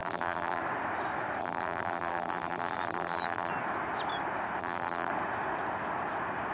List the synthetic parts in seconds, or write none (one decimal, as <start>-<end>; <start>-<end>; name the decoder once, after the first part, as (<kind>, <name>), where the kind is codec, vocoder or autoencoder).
0.0-0.6 (vocoder, BigVGAN v2); 1.4-3.5; 4.6-5.1

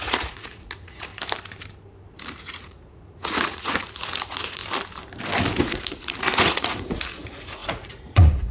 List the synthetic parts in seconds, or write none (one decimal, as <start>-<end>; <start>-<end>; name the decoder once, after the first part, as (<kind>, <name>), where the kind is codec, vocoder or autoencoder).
0.0-1.1 (vocoder, Vocos); 2.4-4.6; 5.6-8.5

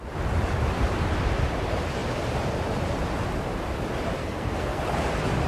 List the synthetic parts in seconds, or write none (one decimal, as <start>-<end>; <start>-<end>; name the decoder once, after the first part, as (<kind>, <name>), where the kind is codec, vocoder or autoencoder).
4.2-4.8 (codec, SNAC)

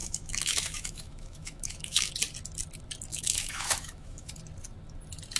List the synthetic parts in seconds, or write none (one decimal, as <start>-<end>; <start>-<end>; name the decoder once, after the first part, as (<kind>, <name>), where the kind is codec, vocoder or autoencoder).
0.0-2.1 (autoencoder, DAC-VAE); 3.1-4.3

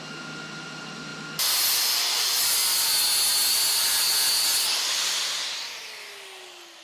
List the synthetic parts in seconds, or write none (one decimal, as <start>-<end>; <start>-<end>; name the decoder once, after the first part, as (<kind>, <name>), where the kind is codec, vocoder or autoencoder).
none